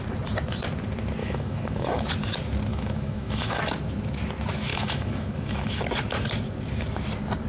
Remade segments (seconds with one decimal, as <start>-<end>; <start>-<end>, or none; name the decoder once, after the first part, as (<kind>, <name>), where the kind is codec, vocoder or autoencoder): 1.2-2.1 (autoencoder, DAC-VAE); 2.7-3.6; 4.7-5.8